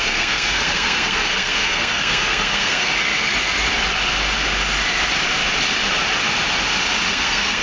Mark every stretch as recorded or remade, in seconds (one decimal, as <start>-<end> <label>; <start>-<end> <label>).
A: 0.0-2.9 remade; 2.9-7.1 recorded; 7.1-7.6 remade